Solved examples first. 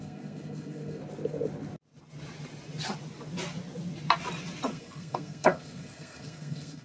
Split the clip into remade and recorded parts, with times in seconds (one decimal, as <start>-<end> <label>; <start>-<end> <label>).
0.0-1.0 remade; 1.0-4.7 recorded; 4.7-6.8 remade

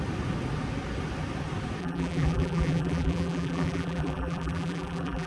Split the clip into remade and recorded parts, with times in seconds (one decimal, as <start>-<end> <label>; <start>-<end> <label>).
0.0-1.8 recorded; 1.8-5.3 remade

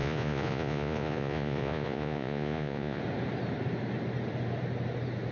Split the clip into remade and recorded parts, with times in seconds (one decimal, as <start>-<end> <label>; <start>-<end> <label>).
0.0-3.0 remade; 3.0-5.3 recorded